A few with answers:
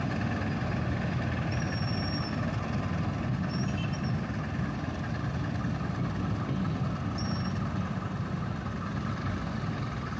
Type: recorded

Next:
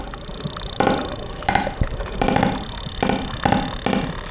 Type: recorded